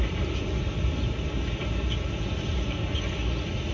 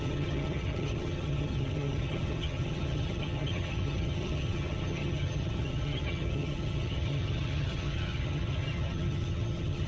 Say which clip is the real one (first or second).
first